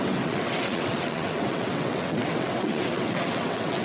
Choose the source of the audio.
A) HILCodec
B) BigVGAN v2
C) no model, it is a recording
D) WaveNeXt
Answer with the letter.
D